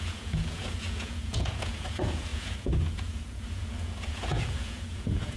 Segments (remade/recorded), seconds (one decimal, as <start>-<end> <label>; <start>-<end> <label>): 0.0-5.4 remade